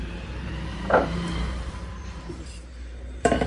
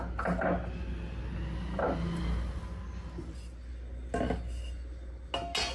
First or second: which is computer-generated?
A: first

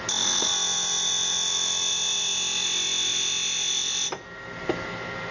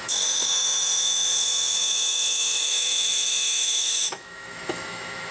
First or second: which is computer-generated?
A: second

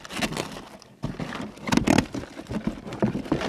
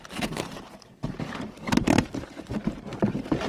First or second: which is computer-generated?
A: second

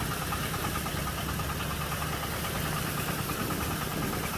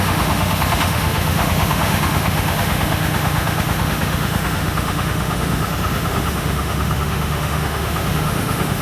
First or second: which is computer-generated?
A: second